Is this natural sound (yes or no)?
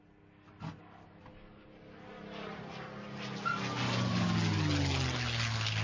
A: yes